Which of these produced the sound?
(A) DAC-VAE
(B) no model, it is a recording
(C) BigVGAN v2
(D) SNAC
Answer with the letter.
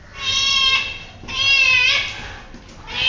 B